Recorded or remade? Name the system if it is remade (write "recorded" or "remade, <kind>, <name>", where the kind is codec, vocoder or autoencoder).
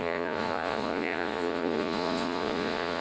remade, vocoder, Vocos